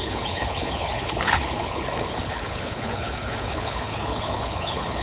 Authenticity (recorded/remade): remade